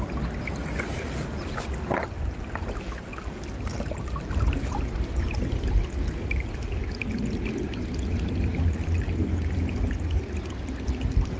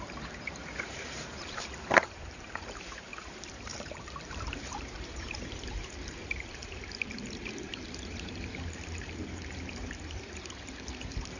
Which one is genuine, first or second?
first